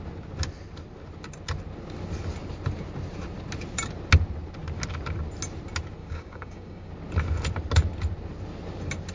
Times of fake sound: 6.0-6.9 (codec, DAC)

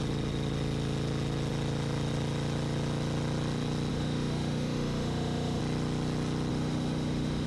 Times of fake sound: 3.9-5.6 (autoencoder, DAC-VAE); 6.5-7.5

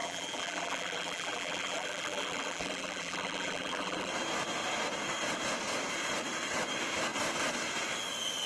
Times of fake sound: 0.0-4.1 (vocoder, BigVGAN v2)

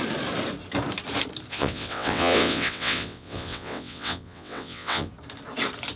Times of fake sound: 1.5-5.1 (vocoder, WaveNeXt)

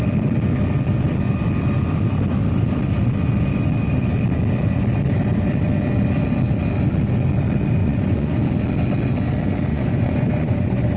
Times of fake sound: 7.8-8.4 (vocoder, Vocos); 9.7-11.0

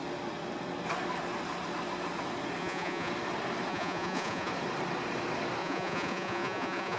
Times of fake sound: 2.6-3.1 (vocoder, Vocos); 3.7-4.5; 5.6-7.0

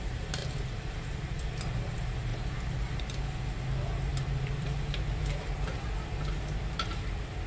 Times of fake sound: 0.4-1.9 (vocoder, BigVGAN v2); 2.3-3.0; 4.1-5.2

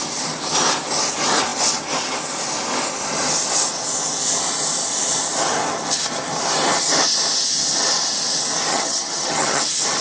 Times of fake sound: 8.7-9.6 (vocoder, HiFi-GAN)